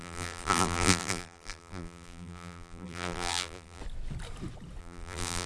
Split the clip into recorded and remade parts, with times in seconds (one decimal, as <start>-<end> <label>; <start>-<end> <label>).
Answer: 0.0-3.8 remade; 3.8-4.8 recorded; 4.8-5.5 remade

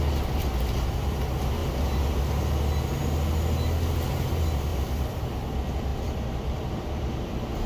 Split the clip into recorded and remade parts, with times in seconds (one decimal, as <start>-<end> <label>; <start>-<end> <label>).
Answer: 0.0-1.6 recorded; 1.6-2.2 remade; 2.2-4.7 recorded; 4.7-5.2 remade; 5.2-5.9 recorded; 5.9-7.7 remade

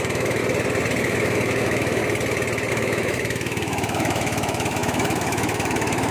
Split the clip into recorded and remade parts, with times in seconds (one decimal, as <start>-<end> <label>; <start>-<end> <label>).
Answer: 0.0-0.4 remade; 0.4-1.0 recorded; 1.0-2.0 remade; 2.0-2.7 recorded; 2.7-6.1 remade

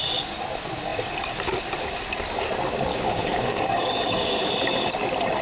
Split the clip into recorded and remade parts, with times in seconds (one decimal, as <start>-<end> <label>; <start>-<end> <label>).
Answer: 0.0-2.9 recorded; 2.9-4.5 remade; 4.5-5.4 recorded